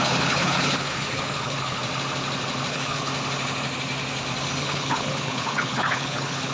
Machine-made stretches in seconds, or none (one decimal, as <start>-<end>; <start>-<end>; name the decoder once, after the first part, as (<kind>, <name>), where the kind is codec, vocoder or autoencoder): 0.0-1.8 (codec, HILCodec); 2.7-3.1; 4.6-6.5

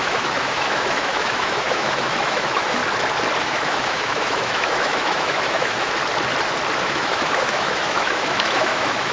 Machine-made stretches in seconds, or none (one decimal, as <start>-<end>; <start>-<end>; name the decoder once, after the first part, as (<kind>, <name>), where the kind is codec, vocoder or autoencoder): 0.0-2.8 (autoencoder, DAC-VAE); 3.4-6.0; 6.8-9.1

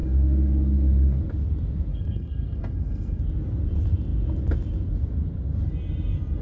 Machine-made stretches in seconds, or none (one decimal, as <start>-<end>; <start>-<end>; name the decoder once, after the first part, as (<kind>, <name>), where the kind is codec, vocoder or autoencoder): 0.0-1.2 (codec, SNAC); 1.9-3.2

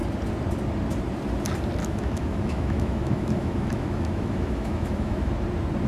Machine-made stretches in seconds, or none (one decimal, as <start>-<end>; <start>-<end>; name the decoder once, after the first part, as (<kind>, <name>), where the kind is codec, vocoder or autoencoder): 1.8-5.3 (autoencoder, DAC-VAE)

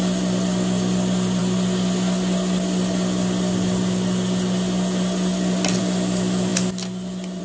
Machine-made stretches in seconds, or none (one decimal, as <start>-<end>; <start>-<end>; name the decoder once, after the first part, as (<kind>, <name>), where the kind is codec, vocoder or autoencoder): none

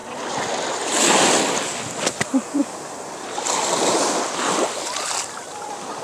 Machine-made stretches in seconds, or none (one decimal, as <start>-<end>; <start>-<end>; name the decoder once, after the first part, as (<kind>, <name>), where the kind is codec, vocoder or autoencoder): 2.6-6.0 (vocoder, BigVGAN v2)

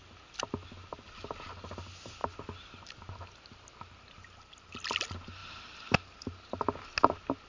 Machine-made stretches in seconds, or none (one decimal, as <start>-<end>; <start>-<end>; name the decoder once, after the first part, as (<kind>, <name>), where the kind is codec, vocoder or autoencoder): 5.4-6.6 (vocoder, BigVGAN v2)